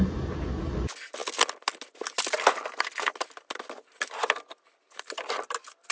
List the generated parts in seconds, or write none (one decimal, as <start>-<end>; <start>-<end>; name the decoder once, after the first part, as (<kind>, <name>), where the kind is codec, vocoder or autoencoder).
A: none